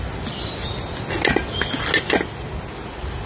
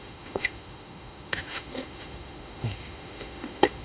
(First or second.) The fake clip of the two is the second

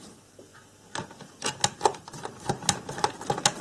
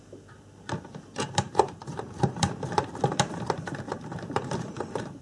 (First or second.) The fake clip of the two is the second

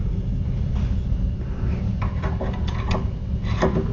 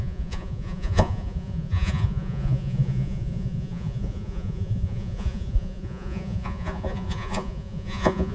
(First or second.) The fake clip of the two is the second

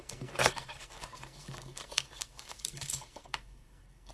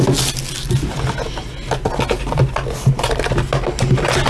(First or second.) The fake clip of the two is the first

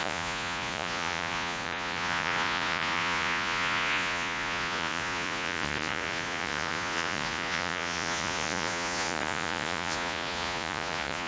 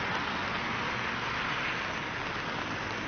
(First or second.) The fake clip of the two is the first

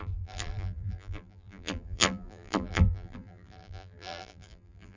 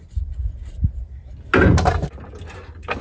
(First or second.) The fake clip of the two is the first